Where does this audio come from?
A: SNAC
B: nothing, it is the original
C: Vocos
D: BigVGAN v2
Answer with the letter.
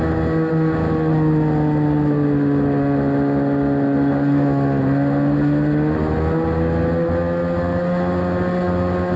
B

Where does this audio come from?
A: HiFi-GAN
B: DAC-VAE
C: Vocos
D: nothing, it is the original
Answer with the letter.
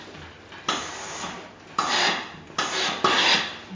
D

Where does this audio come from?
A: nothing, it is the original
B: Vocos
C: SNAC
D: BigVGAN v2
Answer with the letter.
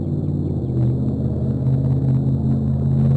A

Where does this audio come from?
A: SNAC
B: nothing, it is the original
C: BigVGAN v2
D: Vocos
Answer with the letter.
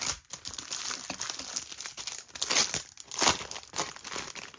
B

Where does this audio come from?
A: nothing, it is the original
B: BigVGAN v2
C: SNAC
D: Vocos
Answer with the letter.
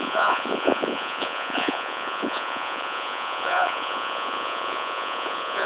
D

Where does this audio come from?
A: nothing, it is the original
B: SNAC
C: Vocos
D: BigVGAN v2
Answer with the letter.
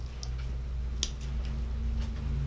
A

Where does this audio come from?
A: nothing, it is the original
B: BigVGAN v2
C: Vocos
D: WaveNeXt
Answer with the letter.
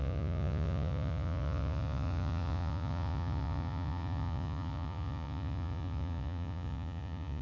C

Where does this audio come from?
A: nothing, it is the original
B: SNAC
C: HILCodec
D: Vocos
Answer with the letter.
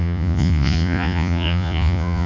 D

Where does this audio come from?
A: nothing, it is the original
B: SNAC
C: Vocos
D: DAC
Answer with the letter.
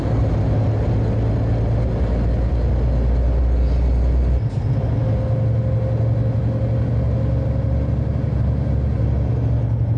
A